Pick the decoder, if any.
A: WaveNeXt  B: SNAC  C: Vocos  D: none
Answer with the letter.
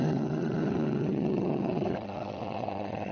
A